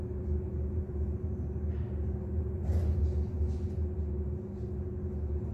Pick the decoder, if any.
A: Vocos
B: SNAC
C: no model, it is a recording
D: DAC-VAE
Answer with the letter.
C